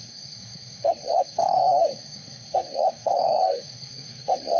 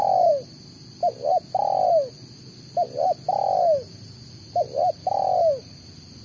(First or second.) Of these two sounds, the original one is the second